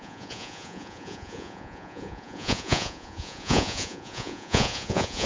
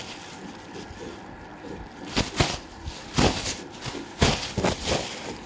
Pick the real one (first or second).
second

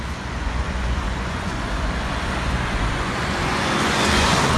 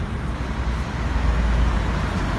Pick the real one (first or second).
second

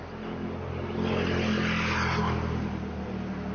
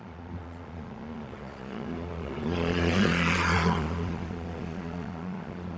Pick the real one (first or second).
first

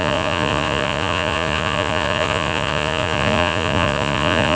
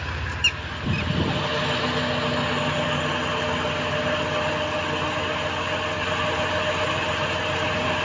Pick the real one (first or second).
second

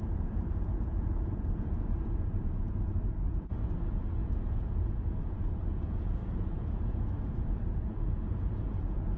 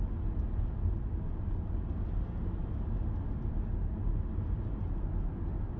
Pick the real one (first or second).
second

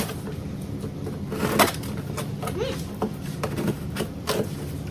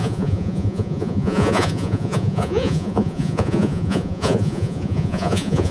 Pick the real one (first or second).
first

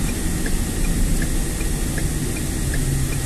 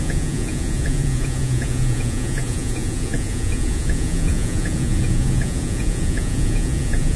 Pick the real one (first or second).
first